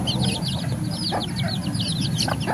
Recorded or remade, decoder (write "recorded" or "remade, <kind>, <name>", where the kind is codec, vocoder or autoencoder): recorded